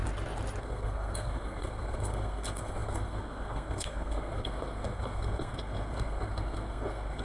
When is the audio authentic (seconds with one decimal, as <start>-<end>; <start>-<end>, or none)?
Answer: 0.0-0.6

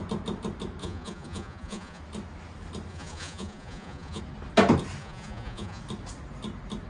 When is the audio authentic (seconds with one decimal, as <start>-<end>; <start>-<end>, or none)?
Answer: 0.0-0.8; 2.0-2.9; 4.2-5.0; 5.8-6.9